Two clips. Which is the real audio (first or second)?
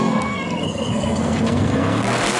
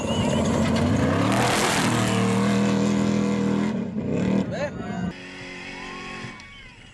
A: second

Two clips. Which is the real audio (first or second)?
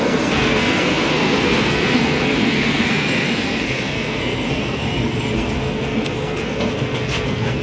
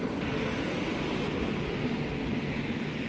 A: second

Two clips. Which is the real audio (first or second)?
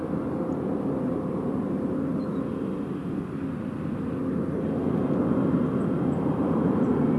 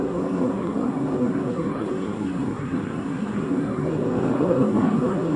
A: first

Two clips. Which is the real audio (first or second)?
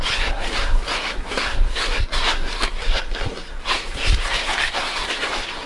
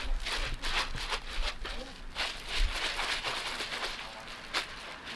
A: second